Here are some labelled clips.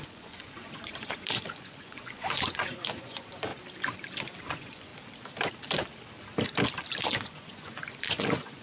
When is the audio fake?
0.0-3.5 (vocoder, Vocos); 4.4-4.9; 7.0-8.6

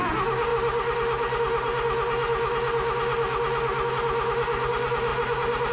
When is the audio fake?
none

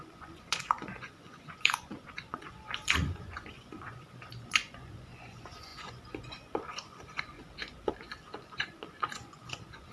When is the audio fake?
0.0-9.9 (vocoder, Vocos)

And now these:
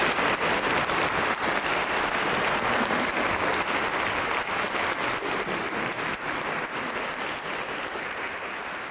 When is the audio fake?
none

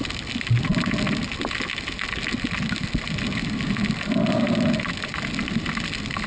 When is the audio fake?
none